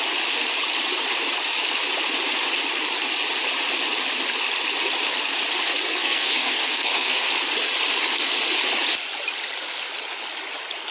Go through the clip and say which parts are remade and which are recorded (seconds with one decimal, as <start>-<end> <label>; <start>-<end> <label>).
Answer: 0.0-6.0 recorded; 6.0-7.3 remade; 7.3-10.9 recorded